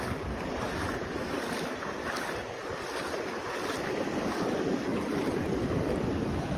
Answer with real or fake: real